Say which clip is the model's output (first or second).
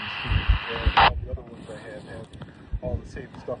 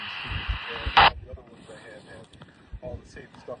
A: second